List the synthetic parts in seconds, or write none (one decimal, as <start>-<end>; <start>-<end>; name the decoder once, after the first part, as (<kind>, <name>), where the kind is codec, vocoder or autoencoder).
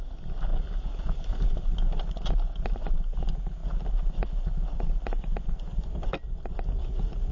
none